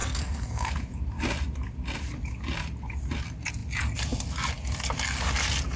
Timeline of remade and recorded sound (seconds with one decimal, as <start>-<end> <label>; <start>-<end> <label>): 0.0-0.7 remade; 0.7-5.8 recorded